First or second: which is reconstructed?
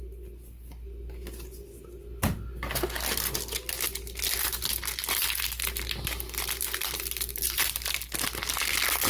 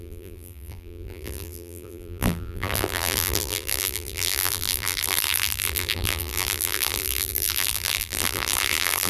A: second